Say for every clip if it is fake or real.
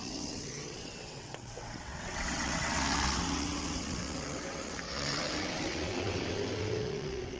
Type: fake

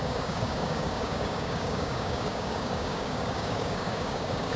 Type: fake